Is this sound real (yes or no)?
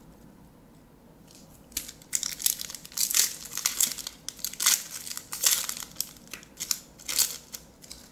yes